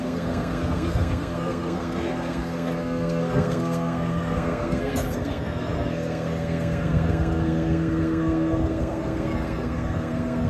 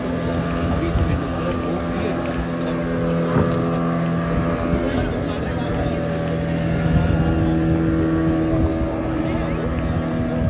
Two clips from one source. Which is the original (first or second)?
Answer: second